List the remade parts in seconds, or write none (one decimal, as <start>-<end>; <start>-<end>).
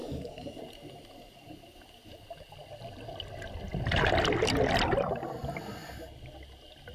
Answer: 0.0-0.6